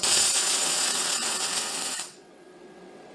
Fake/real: fake